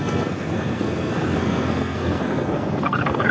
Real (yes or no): no